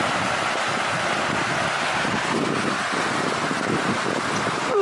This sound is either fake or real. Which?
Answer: real